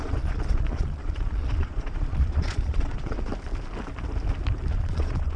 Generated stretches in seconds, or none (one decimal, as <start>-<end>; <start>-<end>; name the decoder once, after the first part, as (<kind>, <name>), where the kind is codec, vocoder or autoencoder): 0.0-3.3 (vocoder, Vocos); 4.7-5.4